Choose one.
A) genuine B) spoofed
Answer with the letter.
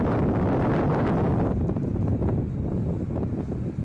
A